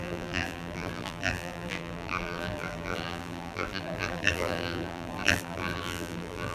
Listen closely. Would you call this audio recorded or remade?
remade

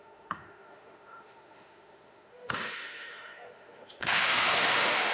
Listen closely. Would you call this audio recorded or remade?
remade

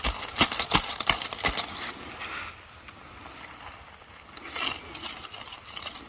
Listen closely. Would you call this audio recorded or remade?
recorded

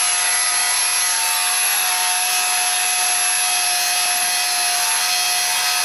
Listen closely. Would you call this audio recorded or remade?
recorded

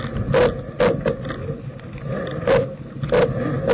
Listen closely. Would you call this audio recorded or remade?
recorded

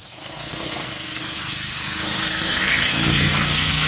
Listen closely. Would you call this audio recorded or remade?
remade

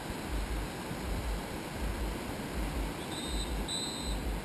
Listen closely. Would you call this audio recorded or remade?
recorded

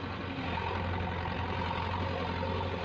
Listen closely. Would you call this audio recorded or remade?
recorded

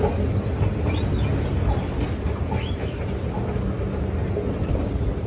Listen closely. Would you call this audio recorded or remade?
recorded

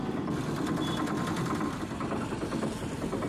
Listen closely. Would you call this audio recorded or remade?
recorded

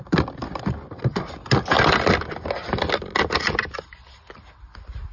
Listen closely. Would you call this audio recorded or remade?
recorded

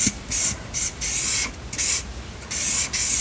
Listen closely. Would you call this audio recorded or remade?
recorded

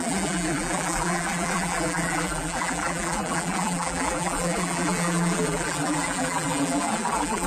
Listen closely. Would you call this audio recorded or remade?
remade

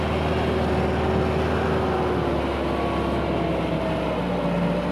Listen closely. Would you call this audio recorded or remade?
recorded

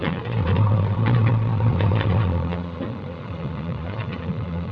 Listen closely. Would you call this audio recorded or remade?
remade